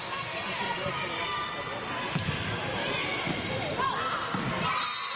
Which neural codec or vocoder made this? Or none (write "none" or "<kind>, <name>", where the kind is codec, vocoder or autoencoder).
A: none